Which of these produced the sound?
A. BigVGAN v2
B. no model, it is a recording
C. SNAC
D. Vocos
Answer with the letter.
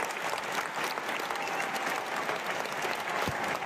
B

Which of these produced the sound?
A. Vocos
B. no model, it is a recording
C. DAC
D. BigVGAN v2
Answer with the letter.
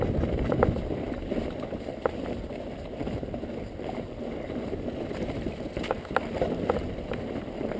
B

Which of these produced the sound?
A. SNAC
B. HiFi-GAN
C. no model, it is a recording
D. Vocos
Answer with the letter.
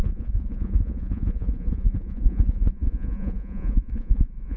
D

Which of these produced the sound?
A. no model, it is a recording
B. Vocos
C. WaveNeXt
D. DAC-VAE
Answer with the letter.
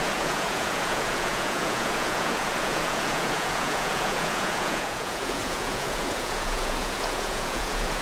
B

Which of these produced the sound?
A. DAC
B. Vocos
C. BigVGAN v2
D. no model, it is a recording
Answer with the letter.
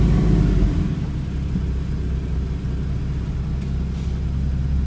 D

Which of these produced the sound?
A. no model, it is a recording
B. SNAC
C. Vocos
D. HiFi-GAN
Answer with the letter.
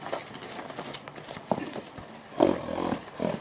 A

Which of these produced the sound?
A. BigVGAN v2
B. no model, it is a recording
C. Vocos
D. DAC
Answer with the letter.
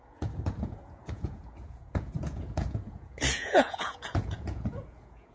C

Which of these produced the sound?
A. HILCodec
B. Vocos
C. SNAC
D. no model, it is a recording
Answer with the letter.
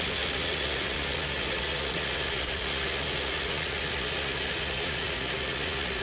B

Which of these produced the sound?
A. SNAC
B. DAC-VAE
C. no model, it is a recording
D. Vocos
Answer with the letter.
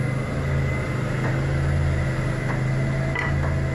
C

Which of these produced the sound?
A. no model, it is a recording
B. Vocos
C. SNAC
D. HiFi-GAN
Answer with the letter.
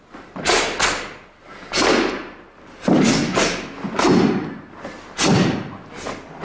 A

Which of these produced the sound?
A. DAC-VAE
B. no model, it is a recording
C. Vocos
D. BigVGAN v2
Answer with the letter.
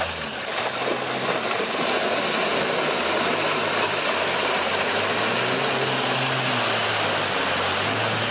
B